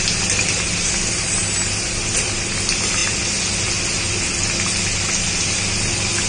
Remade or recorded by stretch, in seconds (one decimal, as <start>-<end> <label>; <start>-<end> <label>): 0.0-6.3 recorded